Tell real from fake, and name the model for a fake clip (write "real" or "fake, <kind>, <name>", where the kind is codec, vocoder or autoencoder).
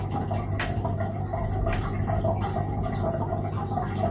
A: real